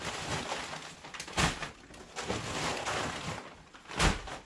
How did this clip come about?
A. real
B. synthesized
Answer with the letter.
A